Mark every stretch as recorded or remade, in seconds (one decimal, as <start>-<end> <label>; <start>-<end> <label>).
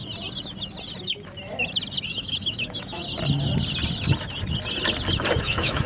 0.0-2.1 recorded; 2.1-3.0 remade; 3.0-5.4 recorded; 5.4-5.9 remade